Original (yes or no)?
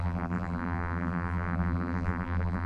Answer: no